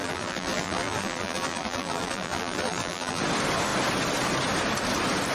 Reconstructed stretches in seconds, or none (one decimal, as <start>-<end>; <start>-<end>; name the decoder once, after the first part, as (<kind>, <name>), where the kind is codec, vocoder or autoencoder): 0.0-3.2 (vocoder, BigVGAN v2)